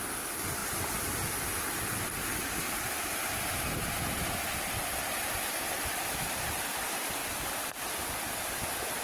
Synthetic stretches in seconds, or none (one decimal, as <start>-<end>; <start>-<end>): none